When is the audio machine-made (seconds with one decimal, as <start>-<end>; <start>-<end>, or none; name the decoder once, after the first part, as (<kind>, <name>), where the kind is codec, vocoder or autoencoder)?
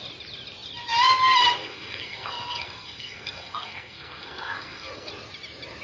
1.6-5.1 (codec, SNAC)